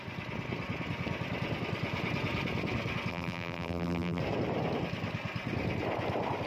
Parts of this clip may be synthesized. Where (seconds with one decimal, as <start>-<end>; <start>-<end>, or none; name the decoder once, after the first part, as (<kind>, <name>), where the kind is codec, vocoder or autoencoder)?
3.1-4.2 (vocoder, BigVGAN v2)